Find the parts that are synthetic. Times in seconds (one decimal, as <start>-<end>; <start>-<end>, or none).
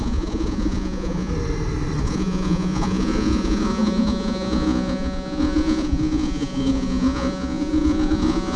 0.0-1.3; 2.0-8.6